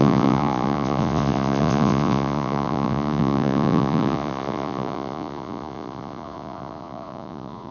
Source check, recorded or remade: remade